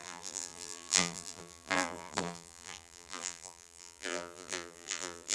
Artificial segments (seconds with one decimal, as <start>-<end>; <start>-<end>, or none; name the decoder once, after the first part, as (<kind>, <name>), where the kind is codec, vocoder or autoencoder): 0.0-5.3 (vocoder, BigVGAN v2)

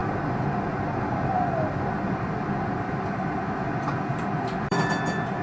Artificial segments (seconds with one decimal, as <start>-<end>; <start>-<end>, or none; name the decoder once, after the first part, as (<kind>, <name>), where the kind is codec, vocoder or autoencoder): 2.4-3.4 (vocoder, BigVGAN v2); 4.2-5.4